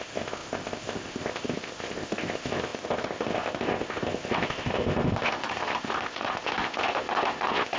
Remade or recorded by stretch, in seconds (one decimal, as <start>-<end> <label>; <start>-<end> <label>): 0.0-7.8 remade